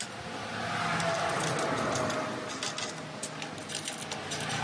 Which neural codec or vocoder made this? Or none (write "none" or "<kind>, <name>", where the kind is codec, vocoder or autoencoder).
none